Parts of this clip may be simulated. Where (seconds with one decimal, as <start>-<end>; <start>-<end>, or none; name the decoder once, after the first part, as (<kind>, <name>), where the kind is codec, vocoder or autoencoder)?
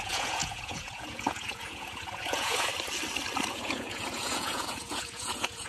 0.0-2.7 (vocoder, Vocos); 3.5-5.7